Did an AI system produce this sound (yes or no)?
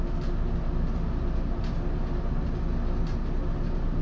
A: no